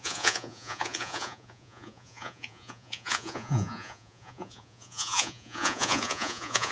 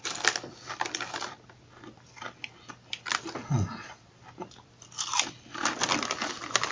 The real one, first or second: second